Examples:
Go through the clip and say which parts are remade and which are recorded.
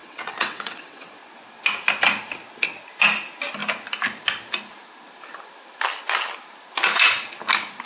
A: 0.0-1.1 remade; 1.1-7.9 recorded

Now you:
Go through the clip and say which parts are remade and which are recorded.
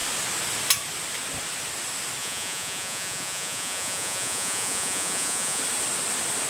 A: 0.0-2.2 recorded; 2.2-5.6 remade; 5.6-6.5 recorded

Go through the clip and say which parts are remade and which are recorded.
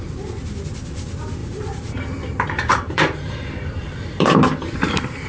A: 0.0-1.4 recorded; 1.4-4.4 remade; 4.4-5.3 recorded